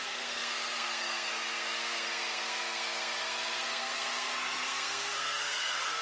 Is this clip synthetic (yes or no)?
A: yes